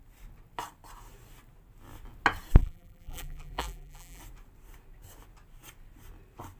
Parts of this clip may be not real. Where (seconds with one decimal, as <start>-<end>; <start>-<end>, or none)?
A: 2.6-4.2